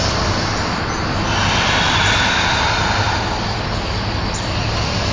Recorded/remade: recorded